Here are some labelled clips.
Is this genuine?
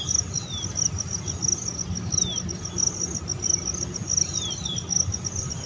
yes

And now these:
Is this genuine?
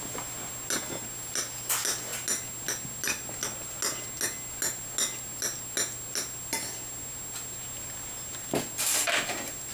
yes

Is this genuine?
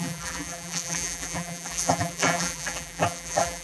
no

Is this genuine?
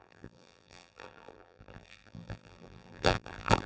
no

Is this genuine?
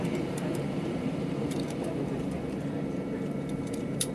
no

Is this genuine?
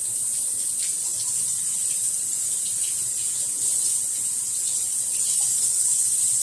yes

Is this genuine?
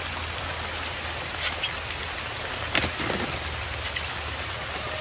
no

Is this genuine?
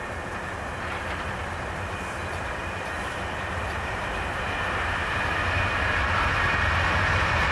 yes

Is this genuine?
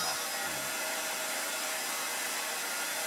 no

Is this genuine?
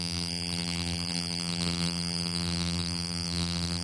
no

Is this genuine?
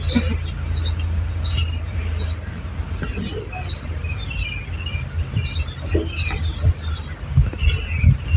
yes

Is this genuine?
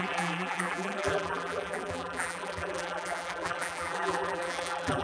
no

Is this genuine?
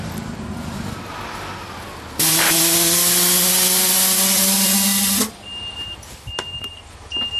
yes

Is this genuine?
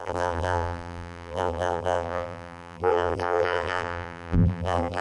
no